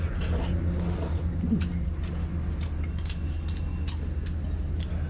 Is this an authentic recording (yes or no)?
yes